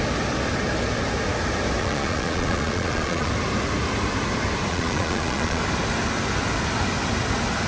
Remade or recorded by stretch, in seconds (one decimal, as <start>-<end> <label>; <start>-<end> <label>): 0.0-1.8 recorded; 1.8-3.3 remade; 3.3-4.7 recorded; 4.7-5.6 remade; 5.6-7.7 recorded